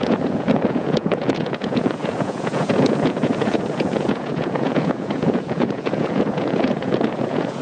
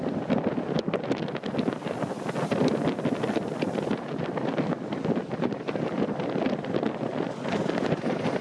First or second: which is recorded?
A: second